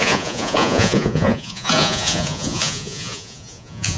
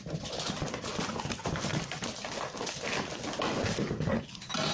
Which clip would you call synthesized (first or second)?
first